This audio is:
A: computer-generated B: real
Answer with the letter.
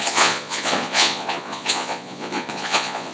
A